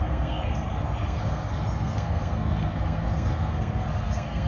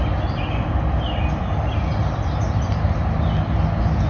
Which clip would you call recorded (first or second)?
second